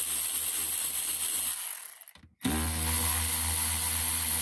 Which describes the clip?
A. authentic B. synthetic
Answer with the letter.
A